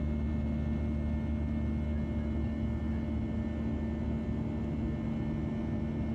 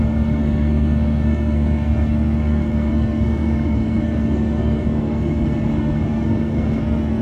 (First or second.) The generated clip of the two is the second